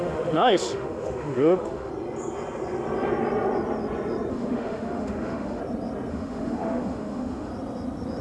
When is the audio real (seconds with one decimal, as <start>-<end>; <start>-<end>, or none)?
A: 1.9-4.3; 5.6-6.1; 7.5-8.2